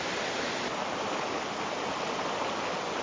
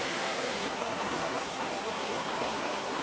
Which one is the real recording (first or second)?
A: first